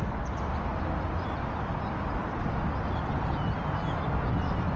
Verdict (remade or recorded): recorded